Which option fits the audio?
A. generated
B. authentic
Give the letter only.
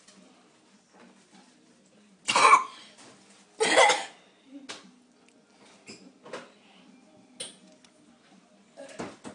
B